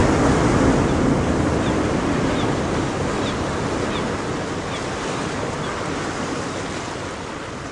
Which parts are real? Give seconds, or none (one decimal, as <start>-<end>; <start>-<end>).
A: 0.0-7.7